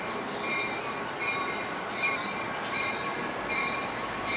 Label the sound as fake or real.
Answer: real